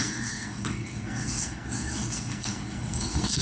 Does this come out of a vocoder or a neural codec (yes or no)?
yes